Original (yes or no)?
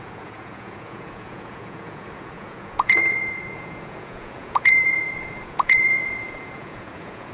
no